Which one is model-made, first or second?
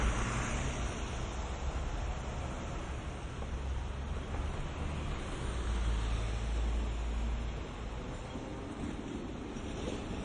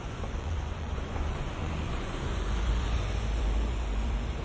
second